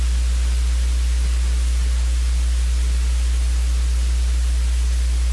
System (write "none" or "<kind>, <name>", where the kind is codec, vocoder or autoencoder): none